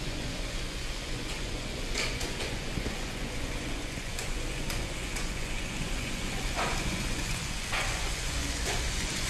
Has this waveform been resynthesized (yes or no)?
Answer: yes